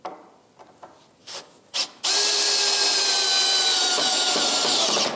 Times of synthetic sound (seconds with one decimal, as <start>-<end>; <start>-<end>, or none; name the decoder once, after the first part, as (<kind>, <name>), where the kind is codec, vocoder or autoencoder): none